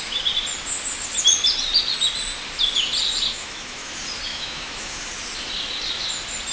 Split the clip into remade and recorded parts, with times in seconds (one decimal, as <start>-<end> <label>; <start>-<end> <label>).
0.0-3.3 recorded; 3.3-3.9 remade; 3.9-4.3 recorded; 4.3-5.1 remade; 5.1-6.5 recorded